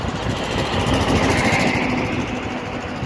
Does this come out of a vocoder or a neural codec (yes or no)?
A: no